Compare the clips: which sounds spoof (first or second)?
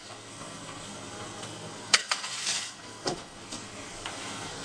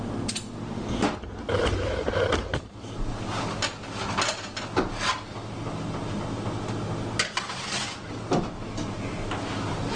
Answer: first